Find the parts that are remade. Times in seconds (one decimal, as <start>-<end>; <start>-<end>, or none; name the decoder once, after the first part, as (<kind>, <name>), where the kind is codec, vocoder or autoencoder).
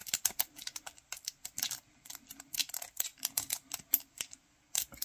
none